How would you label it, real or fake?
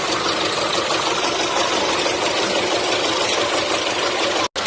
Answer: real